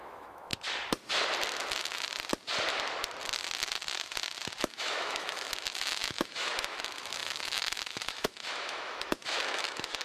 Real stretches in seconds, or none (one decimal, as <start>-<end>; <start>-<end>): 0.5-4.6